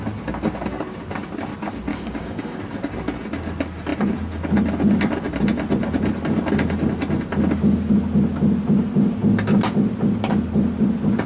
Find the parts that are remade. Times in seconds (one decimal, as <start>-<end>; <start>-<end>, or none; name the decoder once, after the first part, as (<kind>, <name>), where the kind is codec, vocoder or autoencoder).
1.9-2.6 (codec, DAC)